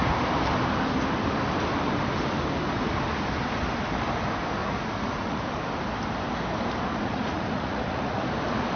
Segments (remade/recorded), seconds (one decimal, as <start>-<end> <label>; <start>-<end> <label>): 0.0-4.6 recorded; 4.6-5.5 remade; 5.5-6.9 recorded; 6.9-8.2 remade; 8.2-8.8 recorded